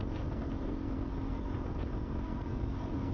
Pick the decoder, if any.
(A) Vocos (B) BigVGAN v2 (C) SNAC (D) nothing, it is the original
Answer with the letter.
C